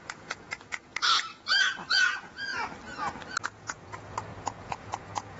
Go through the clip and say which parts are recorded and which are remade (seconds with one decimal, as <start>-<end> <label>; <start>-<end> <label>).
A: 0.0-2.5 remade; 2.5-3.4 recorded; 3.4-5.4 remade